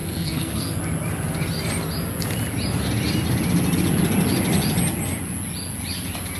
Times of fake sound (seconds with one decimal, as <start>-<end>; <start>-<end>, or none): 0.0-0.8